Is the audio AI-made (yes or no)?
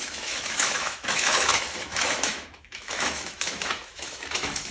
yes